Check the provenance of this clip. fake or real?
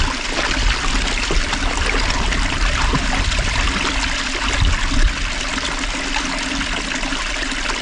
real